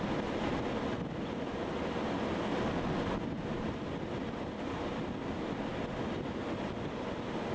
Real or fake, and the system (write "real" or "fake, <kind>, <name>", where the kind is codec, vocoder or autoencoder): real